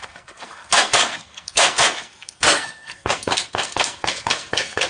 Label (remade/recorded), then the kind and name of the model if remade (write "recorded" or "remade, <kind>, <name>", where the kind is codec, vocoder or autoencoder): remade, codec, SNAC